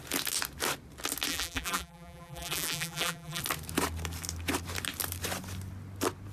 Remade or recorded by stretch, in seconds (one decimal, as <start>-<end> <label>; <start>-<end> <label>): 0.0-1.3 recorded; 1.3-3.4 remade; 3.4-6.3 recorded